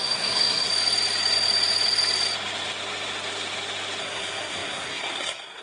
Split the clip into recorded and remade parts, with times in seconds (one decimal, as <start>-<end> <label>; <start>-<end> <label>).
0.0-0.7 remade; 0.7-4.0 recorded; 4.0-5.6 remade

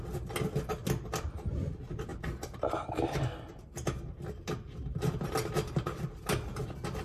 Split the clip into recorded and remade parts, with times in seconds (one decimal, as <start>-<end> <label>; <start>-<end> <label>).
0.0-7.0 recorded

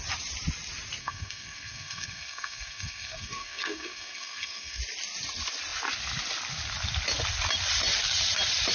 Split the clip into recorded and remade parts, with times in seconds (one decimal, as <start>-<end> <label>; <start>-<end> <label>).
0.0-1.0 recorded; 1.0-4.8 remade; 4.8-8.7 recorded

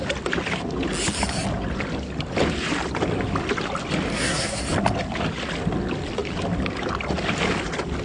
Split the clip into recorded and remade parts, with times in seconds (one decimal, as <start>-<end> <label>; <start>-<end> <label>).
0.0-4.1 recorded; 4.1-4.6 remade; 4.6-8.0 recorded

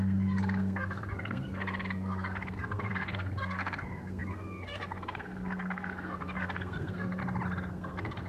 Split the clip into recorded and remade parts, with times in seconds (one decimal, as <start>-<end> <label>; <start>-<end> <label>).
0.0-7.2 remade; 7.2-7.7 recorded; 7.7-8.3 remade

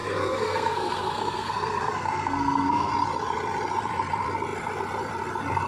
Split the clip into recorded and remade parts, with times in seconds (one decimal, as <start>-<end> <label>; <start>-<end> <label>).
0.0-2.9 remade; 2.9-5.7 recorded

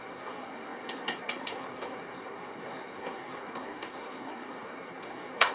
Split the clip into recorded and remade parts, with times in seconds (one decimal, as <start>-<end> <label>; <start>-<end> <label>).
0.0-5.5 remade

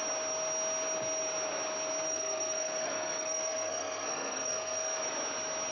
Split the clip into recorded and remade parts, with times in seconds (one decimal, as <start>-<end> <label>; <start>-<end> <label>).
0.0-2.1 recorded; 2.1-5.0 remade; 5.0-5.7 recorded